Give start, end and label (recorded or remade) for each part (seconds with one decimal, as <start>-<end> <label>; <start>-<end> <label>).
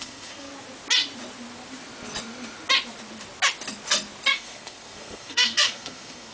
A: 0.0-0.5 remade; 0.5-4.3 recorded; 4.3-6.3 remade